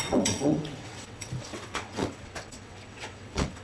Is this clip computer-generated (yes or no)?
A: yes